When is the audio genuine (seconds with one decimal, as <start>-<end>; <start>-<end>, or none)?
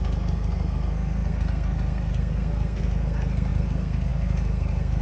none